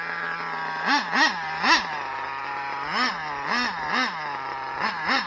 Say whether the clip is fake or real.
real